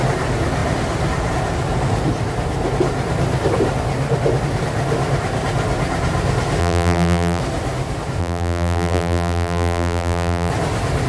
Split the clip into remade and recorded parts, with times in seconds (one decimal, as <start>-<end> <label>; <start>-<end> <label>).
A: 0.0-6.6 recorded; 6.6-7.4 remade; 7.4-8.2 recorded; 8.2-10.5 remade; 10.5-11.1 recorded